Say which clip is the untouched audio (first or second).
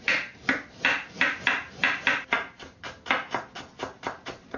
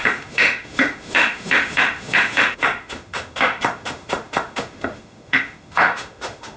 first